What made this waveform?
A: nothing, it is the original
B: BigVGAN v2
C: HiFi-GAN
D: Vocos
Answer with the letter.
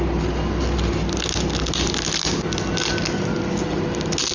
A